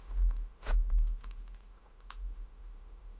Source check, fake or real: fake